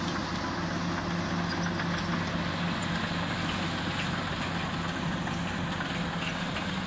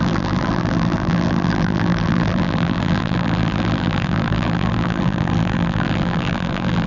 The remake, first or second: second